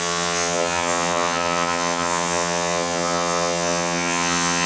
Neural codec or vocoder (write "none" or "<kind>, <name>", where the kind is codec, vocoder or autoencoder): vocoder, HiFi-GAN